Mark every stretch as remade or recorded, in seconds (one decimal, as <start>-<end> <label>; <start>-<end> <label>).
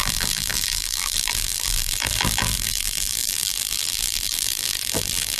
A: 0.0-5.4 remade